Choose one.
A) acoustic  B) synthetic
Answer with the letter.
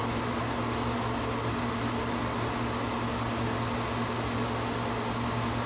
A